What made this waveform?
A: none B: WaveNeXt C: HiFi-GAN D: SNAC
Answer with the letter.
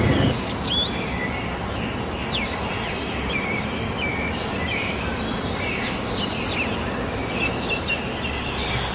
A